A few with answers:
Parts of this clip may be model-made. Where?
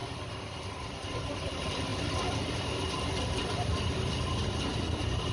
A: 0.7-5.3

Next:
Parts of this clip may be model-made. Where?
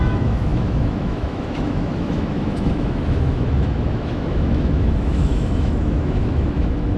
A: 0.0-7.0